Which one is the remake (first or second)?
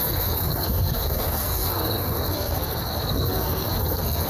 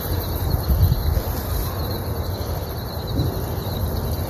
first